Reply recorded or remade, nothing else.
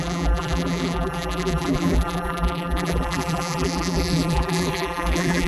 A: remade